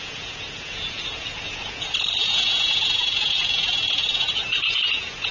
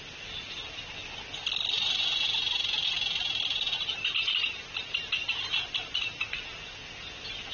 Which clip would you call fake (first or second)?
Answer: first